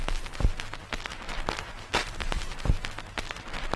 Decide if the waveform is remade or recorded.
recorded